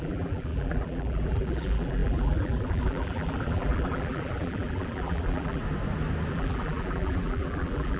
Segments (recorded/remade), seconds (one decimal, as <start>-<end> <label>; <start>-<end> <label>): 0.0-5.6 remade; 5.6-6.3 recorded; 6.3-8.0 remade